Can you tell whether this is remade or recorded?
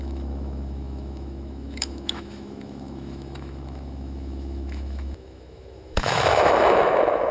remade